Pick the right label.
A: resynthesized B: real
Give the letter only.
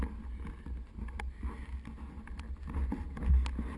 B